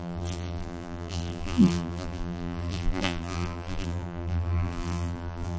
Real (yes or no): no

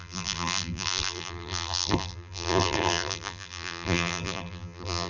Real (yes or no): no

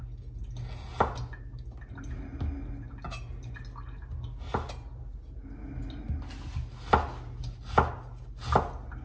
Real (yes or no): yes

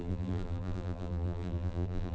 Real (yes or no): no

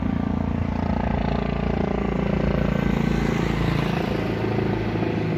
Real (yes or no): yes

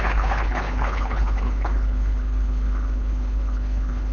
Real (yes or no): no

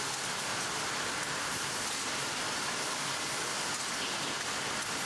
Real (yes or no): yes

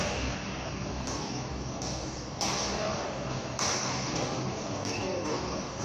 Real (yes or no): no